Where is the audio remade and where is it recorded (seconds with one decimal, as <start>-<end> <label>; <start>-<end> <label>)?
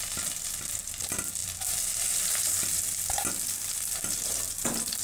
0.0-5.0 recorded